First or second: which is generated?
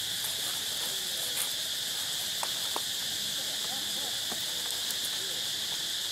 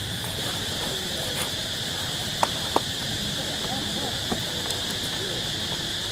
second